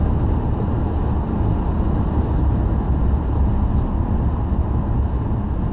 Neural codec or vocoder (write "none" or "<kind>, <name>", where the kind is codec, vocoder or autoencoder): none